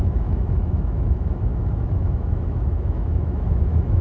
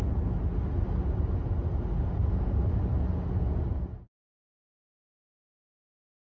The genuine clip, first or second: second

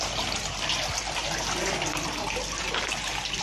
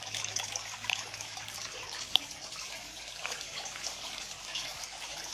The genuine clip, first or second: first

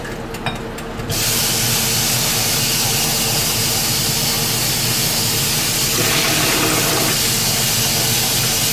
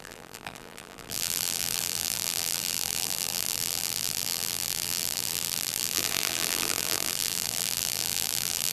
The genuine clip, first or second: first